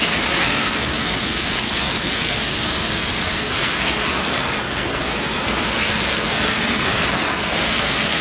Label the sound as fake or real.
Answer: fake